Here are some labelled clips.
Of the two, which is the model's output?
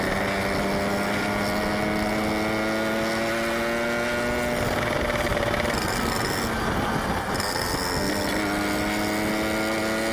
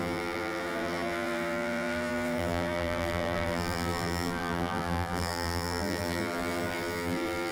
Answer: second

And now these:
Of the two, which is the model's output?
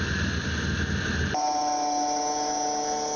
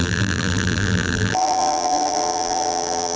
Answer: second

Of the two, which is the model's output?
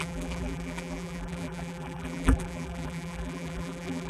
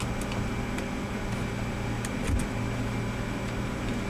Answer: first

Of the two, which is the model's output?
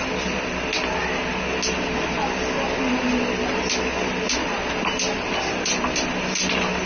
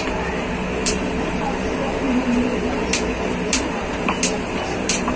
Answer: second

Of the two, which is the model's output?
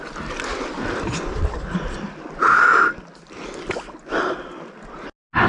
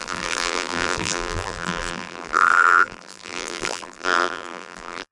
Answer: second